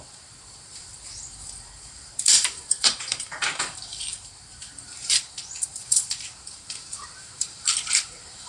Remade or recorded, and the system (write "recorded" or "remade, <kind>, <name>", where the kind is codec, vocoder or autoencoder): remade, vocoder, BigVGAN v2